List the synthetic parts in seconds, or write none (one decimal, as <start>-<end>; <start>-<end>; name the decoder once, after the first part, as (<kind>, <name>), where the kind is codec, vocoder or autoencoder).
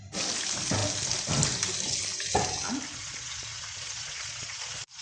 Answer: 2.9-5.0 (vocoder, Vocos)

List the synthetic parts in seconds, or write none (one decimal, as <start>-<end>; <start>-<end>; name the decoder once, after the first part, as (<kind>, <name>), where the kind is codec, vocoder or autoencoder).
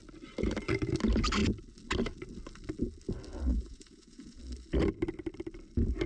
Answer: 3.5-4.4 (vocoder, Vocos)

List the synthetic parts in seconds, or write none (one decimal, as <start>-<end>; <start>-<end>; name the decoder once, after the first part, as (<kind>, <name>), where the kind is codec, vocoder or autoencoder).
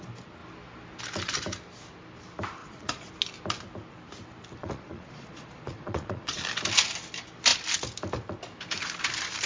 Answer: 2.6-3.1 (vocoder, Vocos); 4.6-6.4